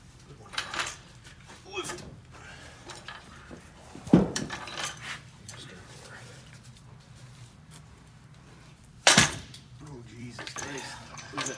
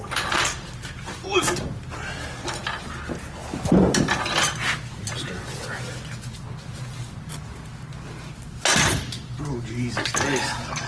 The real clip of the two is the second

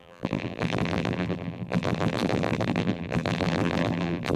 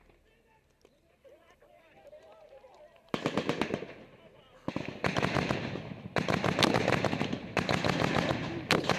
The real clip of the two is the second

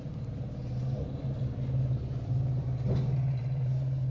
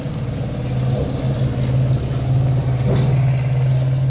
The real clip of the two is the second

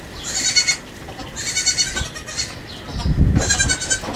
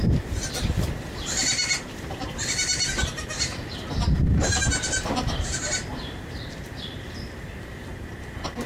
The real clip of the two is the first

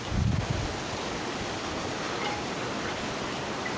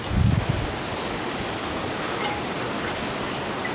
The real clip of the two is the second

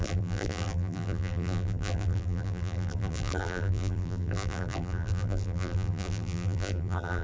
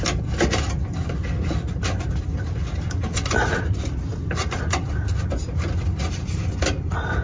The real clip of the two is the second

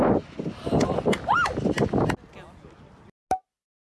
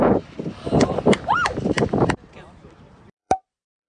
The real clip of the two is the first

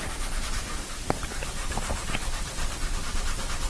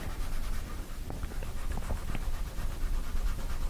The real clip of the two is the second